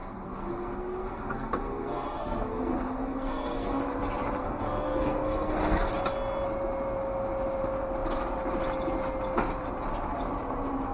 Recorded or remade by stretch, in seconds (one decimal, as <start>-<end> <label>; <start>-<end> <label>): 0.0-3.8 remade; 3.8-4.4 recorded; 4.4-5.9 remade; 5.9-10.9 recorded